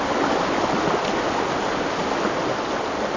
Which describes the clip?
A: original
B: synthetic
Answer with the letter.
A